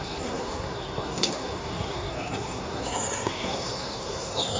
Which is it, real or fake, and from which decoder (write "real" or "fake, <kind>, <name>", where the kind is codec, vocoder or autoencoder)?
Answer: fake, codec, SNAC